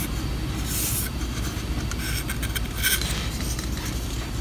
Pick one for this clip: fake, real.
real